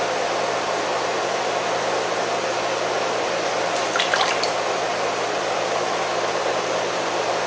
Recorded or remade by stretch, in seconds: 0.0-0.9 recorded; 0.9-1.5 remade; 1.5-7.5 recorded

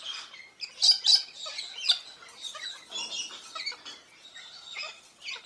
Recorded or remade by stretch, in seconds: 0.0-5.5 recorded

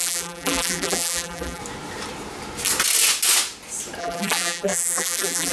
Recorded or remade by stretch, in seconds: 0.0-1.6 remade; 1.6-4.0 recorded; 4.0-5.5 remade

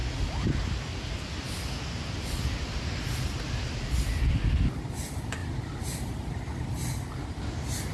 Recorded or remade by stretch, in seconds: 0.0-7.9 recorded

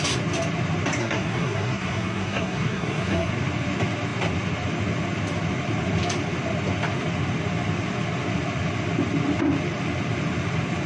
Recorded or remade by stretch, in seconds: 0.0-1.0 recorded; 1.0-3.3 remade; 3.3-10.9 recorded